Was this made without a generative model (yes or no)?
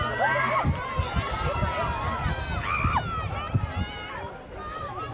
yes